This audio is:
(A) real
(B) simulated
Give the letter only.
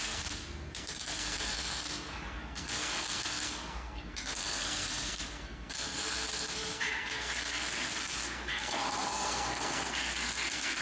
B